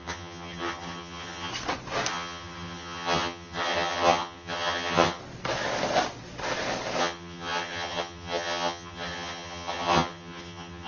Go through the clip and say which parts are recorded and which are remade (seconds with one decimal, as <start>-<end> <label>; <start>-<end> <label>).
0.0-1.5 remade; 1.5-2.1 recorded; 2.1-5.2 remade; 5.2-7.0 recorded; 7.0-10.9 remade